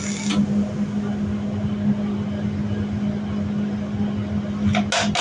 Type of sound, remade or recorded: recorded